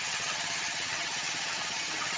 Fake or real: fake